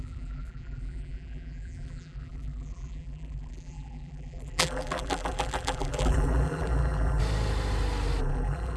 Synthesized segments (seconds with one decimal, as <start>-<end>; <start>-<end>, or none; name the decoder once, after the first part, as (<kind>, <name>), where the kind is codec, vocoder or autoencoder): 0.0-7.2 (vocoder, BigVGAN v2); 8.2-8.8